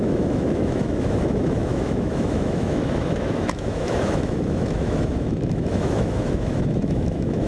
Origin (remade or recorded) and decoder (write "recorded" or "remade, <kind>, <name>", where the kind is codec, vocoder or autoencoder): remade, autoencoder, DAC-VAE